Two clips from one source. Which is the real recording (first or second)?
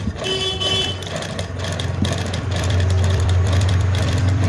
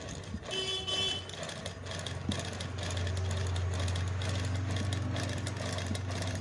second